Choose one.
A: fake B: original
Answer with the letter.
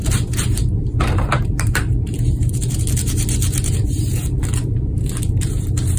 A